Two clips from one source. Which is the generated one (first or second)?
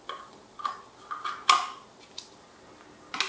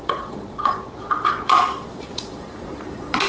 second